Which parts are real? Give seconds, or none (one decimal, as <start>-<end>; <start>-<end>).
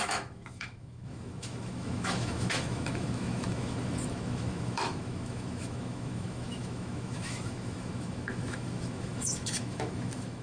none